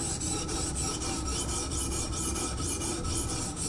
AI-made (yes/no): no